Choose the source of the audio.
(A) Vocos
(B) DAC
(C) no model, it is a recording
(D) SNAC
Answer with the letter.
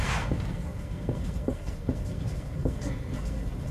D